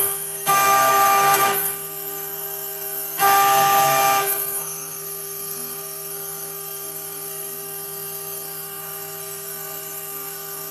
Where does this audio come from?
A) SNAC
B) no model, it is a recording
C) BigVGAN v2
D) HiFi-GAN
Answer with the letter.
A